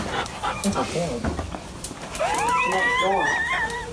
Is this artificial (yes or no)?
no